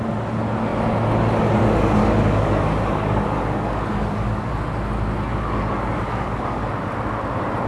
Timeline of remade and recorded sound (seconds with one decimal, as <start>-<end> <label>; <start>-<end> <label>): 0.0-2.0 recorded; 2.0-4.5 remade; 4.5-5.3 recorded; 5.3-6.7 remade; 6.7-7.7 recorded